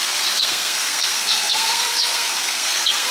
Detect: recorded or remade remade